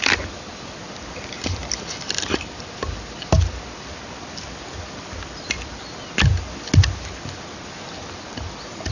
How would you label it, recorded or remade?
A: recorded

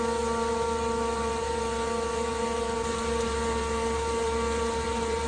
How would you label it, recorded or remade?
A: remade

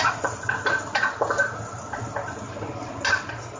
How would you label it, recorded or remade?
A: recorded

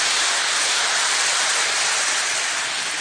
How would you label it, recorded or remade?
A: recorded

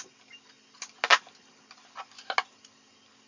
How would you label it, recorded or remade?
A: recorded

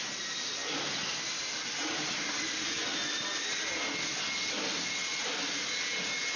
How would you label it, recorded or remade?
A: recorded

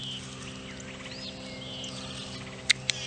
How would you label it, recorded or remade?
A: recorded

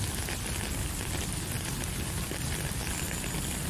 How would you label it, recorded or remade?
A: recorded